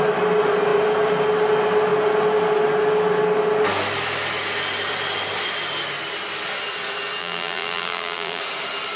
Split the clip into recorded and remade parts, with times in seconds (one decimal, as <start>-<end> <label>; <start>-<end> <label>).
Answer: 0.0-7.2 recorded; 7.2-8.4 remade; 8.4-9.0 recorded